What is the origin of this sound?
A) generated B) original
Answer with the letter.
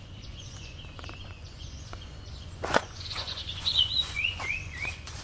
A